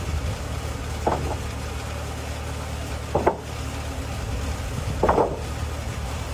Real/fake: real